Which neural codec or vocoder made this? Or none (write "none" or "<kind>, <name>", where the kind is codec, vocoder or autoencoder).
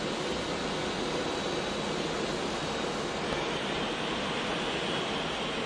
none